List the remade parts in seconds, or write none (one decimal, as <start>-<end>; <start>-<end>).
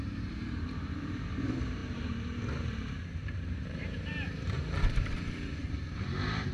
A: 0.0-6.5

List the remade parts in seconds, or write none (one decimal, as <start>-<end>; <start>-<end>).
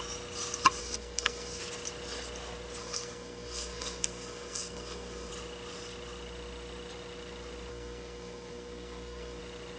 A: 0.8-1.6; 2.8-5.3; 7.7-9.4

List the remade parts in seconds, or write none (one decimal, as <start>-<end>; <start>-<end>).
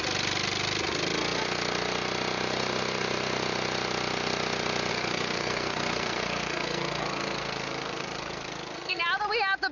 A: 4.9-9.0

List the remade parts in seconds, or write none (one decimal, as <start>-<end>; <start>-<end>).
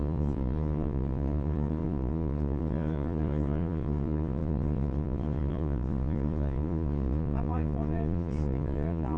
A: 0.0-9.2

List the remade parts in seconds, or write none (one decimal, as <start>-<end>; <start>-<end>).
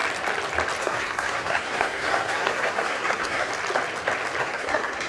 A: 0.8-3.5; 4.4-5.1